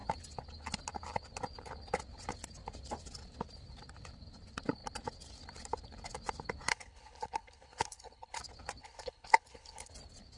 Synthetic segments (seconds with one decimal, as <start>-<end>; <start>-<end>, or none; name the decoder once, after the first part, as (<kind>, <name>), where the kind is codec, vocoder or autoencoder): 6.7-8.4 (codec, HILCodec); 8.8-9.9